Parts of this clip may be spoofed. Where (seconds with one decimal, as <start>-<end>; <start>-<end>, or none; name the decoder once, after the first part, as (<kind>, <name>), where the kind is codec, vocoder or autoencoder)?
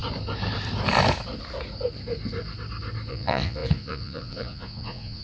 3.1-5.2 (vocoder, Vocos)